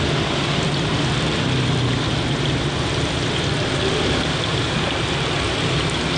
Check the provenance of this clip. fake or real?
real